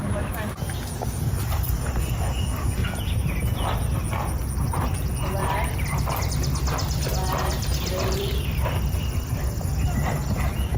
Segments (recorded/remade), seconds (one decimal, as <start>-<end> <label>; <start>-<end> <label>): 0.0-2.8 recorded; 2.8-3.8 remade; 3.8-6.8 recorded; 6.8-8.3 remade; 8.3-10.8 recorded